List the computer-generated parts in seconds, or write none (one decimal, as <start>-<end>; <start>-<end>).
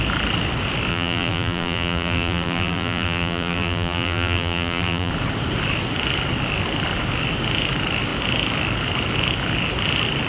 0.9-5.1